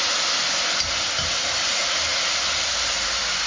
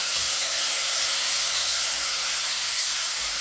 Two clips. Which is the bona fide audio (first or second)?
first